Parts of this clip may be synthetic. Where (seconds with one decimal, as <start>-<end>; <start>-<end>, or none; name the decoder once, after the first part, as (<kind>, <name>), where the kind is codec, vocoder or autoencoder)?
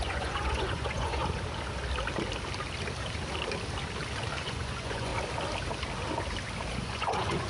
0.0-1.2 (vocoder, Vocos); 4.4-5.1; 6.7-7.5